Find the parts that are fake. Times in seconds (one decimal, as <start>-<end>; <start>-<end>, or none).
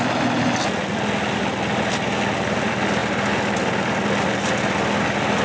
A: none